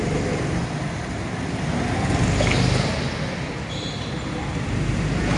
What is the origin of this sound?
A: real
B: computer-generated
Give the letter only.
A